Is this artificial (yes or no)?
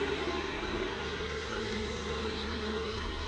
yes